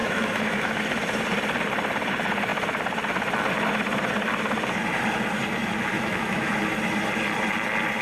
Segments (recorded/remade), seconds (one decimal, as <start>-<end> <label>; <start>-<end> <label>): 0.0-0.8 remade; 0.8-5.9 recorded; 5.9-6.5 remade; 6.5-8.0 recorded